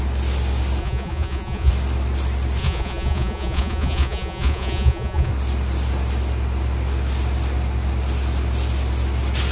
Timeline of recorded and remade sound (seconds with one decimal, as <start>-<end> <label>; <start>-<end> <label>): 0.0-0.8 recorded; 0.8-1.7 remade; 1.7-2.6 recorded; 2.6-5.3 remade; 5.3-9.5 recorded

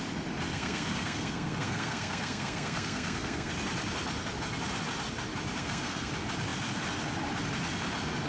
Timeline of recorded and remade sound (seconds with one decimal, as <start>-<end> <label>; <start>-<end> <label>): 0.0-0.5 recorded; 0.5-3.5 remade; 3.5-5.6 recorded; 5.6-6.1 remade; 6.1-8.3 recorded